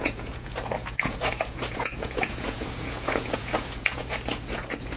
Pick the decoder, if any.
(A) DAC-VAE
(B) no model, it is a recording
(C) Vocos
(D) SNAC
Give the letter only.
C